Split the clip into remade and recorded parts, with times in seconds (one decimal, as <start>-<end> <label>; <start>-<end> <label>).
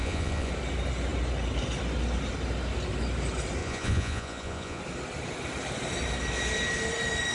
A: 0.0-0.5 remade; 0.5-3.6 recorded; 3.6-4.8 remade; 4.8-7.3 recorded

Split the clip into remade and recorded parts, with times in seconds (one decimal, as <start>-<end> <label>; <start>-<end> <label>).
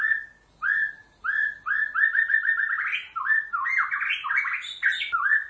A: 0.0-5.5 recorded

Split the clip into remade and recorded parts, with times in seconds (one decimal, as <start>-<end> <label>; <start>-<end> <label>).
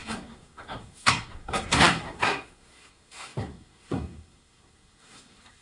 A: 0.0-5.6 remade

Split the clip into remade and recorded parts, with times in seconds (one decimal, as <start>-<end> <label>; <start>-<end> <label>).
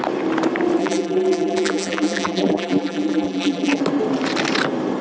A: 0.0-0.8 recorded; 0.8-3.8 remade; 3.8-5.0 recorded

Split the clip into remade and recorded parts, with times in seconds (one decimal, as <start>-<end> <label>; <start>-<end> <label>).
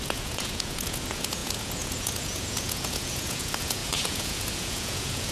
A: 0.0-5.3 remade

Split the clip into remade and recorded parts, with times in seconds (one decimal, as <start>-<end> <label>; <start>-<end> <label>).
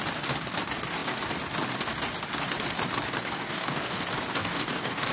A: 0.0-3.4 recorded; 3.4-4.0 remade; 4.0-4.4 recorded; 4.4-5.1 remade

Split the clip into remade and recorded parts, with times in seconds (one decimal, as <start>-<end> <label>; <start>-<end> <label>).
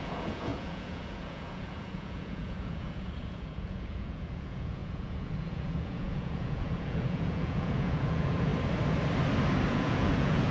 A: 0.0-8.5 remade; 8.5-9.7 recorded; 9.7-10.5 remade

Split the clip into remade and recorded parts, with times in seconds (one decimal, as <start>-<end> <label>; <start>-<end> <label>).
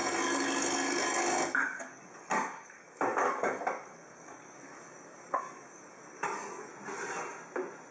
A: 0.0-6.7 remade; 6.7-7.9 recorded